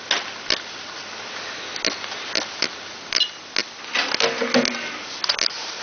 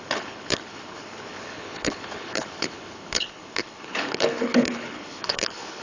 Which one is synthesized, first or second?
second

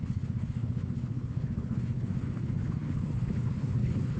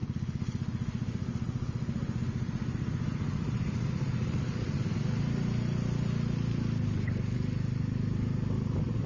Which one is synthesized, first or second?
first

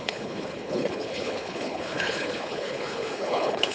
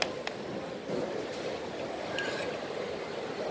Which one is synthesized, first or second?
first